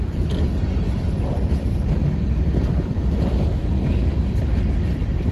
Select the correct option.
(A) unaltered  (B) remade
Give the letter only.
B